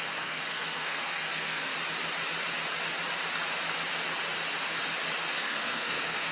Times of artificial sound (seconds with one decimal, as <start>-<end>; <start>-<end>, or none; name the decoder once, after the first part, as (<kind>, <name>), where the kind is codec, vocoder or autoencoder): 0.0-1.7 (codec, SNAC); 5.3-6.3